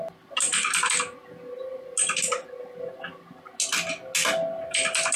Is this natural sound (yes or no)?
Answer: yes